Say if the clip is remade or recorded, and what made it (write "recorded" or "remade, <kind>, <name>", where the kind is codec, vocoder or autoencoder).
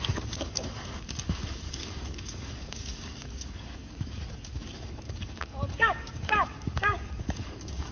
remade, codec, DAC